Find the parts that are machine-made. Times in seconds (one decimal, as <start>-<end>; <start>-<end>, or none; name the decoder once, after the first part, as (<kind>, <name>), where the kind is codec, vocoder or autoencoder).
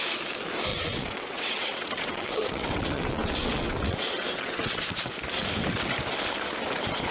0.7-4.8 (vocoder, WaveNeXt)